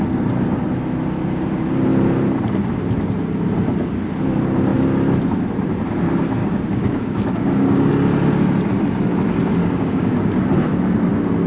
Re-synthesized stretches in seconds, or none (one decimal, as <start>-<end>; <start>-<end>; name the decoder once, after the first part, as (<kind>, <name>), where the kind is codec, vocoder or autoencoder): 6.4-7.9 (codec, DAC); 9.6-10.4